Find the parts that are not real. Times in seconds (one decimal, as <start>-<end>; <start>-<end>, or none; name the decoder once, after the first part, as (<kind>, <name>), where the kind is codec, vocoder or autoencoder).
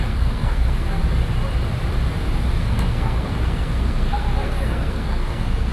0.0-1.0 (codec, SNAC); 2.6-5.7